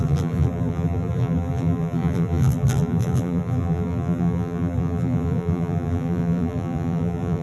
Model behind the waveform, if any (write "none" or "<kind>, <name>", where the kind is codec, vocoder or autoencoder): vocoder, BigVGAN v2